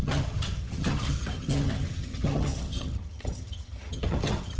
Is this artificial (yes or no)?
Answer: yes